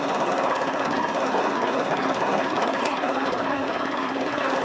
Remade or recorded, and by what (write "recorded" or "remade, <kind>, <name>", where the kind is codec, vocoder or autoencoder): remade, codec, SNAC